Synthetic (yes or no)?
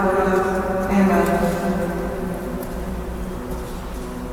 no